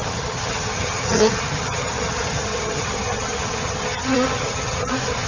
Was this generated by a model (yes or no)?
yes